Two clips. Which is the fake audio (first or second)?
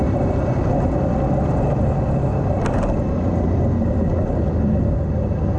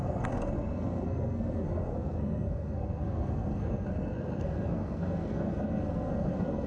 second